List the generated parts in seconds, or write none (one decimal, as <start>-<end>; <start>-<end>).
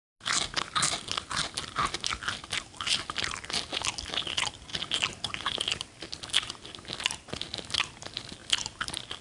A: none